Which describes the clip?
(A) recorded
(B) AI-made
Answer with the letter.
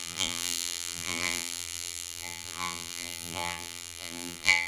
B